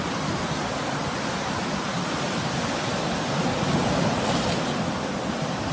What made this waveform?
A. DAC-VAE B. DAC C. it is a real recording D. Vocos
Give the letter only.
C